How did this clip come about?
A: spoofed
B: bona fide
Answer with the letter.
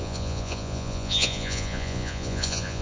A